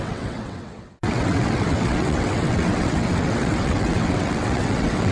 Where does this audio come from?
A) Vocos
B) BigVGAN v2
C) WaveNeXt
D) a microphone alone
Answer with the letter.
C